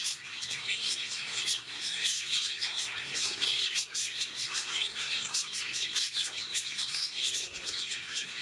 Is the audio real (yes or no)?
no